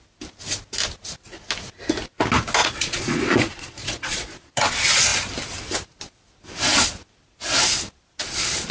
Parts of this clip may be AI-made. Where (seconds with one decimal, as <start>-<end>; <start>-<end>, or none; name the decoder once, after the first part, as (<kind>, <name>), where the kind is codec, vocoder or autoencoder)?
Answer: 2.6-4.6 (vocoder, Vocos)